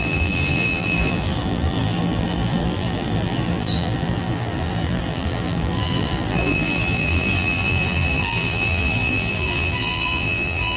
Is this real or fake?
fake